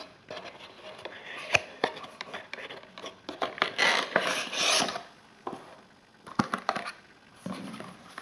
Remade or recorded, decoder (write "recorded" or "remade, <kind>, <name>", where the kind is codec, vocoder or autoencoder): recorded